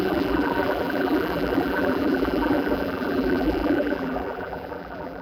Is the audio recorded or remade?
remade